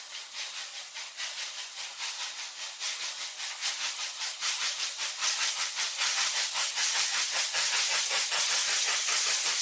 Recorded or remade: remade